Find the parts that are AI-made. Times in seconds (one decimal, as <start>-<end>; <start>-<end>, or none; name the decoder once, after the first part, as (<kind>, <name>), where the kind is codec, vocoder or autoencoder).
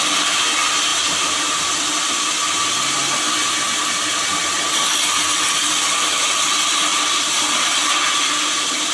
0.9-1.6 (vocoder, BigVGAN v2); 6.9-7.6